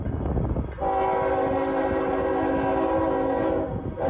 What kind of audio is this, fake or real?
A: real